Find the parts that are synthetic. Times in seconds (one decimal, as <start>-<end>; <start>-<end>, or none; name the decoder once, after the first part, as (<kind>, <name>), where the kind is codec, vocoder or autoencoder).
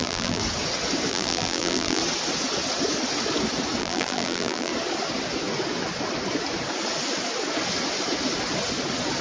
0.0-0.4 (vocoder, BigVGAN v2); 1.1-2.0; 3.8-4.7